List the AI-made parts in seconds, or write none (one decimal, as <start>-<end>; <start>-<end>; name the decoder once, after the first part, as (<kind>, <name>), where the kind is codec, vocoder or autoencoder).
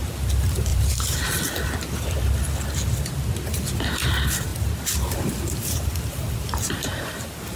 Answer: 0.7-1.4 (vocoder, BigVGAN v2); 4.5-7.6